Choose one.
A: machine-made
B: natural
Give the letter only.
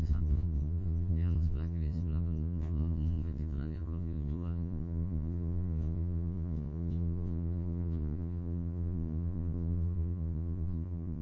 A